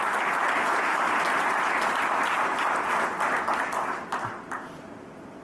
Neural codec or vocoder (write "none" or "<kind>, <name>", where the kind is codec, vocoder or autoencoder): none